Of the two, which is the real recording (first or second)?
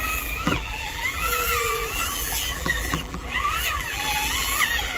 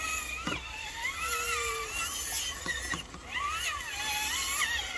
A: second